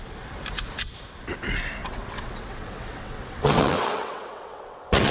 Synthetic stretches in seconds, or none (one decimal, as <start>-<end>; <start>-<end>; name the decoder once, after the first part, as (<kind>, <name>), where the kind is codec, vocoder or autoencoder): 1.8-5.1 (vocoder, WaveNeXt)